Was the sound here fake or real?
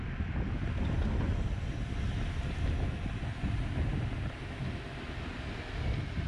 real